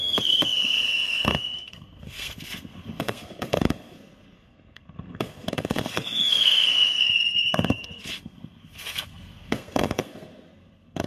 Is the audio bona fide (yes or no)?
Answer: no